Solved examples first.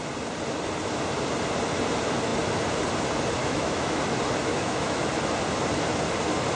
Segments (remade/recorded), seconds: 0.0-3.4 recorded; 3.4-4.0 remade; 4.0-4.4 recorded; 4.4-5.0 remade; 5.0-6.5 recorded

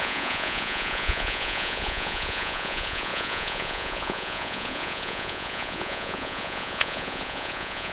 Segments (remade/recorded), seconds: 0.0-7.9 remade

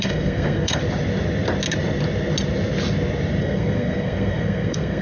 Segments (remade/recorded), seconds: 0.0-0.8 remade; 0.8-3.4 recorded; 3.4-5.0 remade

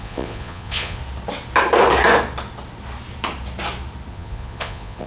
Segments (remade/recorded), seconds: 0.0-1.0 remade; 1.0-4.1 recorded; 4.1-5.1 remade

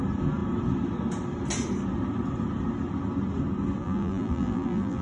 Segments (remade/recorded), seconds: 0.0-3.8 recorded; 3.8-5.0 remade

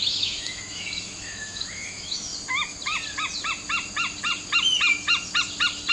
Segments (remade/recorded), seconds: 0.0-2.3 remade; 2.3-5.9 recorded